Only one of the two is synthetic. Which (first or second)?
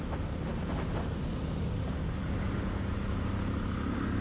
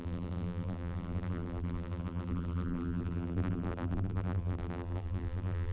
second